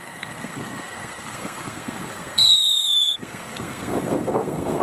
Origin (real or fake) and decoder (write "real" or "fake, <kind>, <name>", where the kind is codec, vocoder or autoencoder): fake, codec, SNAC